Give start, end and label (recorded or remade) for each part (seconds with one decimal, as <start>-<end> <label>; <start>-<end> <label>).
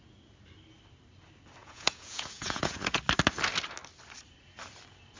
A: 0.0-1.6 recorded; 1.6-3.0 remade; 3.0-5.2 recorded